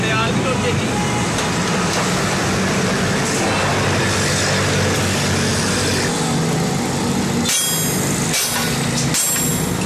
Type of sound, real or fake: real